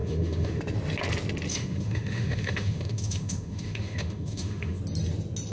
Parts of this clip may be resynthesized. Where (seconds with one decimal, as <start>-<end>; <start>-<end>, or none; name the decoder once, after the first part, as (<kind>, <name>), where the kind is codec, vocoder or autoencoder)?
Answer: 0.0-0.6 (autoencoder, DAC-VAE); 1.5-4.8

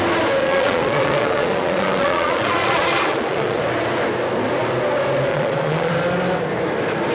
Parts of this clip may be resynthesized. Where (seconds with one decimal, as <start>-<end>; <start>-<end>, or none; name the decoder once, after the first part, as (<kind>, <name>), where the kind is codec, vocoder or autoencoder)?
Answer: 0.4-3.6 (vocoder, Vocos); 5.3-5.9

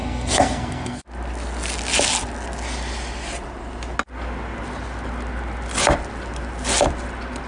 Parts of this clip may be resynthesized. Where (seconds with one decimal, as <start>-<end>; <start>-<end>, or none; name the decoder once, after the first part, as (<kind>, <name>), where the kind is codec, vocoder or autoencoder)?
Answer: 0.0-1.0 (codec, SNAC)

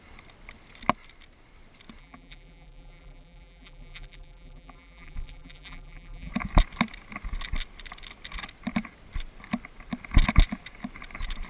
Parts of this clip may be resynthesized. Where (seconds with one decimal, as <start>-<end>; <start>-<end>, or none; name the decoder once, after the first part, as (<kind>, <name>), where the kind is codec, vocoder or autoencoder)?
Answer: 2.0-6.3 (vocoder, BigVGAN v2)